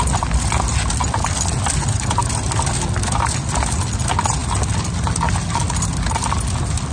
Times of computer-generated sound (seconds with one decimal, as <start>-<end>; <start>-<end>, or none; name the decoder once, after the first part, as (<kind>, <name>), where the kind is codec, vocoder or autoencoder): none